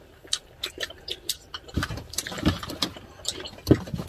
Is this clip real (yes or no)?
no